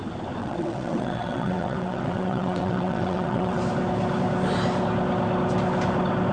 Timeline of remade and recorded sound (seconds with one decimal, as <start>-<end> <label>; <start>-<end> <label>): 0.0-0.4 recorded; 0.4-3.6 remade; 3.6-6.3 recorded